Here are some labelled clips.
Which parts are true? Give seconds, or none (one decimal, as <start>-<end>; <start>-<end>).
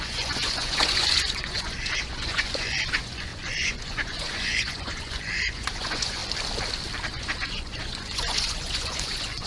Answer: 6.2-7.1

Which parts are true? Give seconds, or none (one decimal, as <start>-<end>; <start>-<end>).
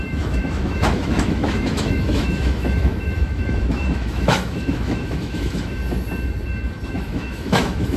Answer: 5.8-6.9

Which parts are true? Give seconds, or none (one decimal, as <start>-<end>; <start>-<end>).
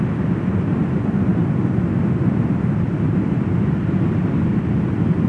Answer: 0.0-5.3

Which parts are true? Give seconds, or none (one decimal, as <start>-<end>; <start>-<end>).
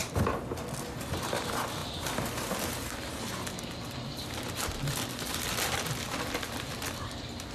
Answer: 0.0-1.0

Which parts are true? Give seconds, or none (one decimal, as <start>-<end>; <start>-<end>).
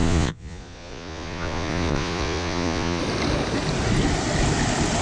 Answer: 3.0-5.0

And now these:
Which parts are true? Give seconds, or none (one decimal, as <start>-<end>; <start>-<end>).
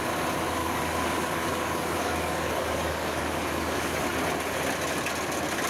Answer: 0.0-0.6; 4.0-5.7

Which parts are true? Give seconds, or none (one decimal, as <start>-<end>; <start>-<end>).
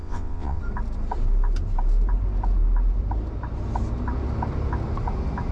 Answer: 0.6-5.5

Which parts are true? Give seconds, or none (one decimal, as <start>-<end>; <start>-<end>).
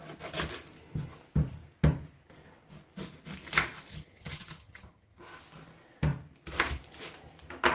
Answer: 0.0-3.9; 5.2-7.7